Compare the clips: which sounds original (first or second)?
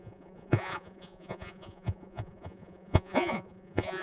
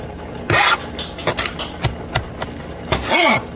second